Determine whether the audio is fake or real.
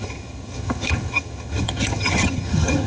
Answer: fake